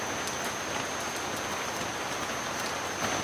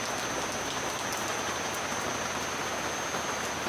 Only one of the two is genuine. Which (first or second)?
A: second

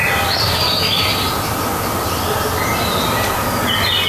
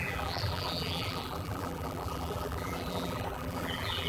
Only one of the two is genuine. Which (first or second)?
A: first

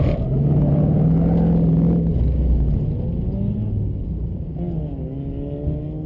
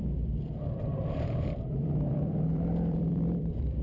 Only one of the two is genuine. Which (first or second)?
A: first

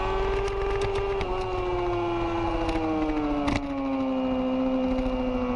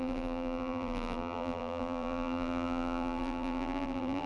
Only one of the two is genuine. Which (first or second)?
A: first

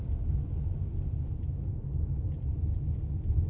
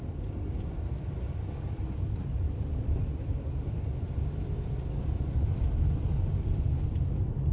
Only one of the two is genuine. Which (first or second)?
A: first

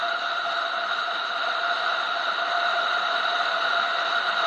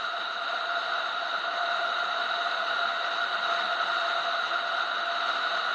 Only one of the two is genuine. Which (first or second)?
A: second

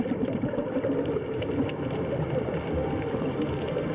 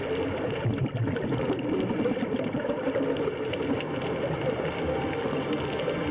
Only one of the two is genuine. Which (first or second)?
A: second